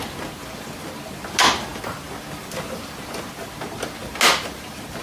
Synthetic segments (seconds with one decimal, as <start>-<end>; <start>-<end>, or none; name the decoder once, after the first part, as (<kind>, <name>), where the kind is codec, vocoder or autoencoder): none